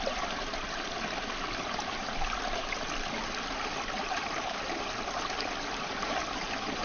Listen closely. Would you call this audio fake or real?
real